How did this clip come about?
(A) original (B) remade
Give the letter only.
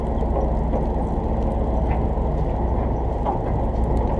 A